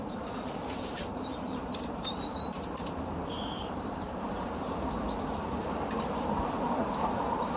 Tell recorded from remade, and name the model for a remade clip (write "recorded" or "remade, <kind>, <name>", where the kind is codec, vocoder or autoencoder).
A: remade, vocoder, BigVGAN v2